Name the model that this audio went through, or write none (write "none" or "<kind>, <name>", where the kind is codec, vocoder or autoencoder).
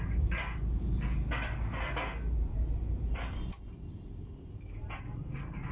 none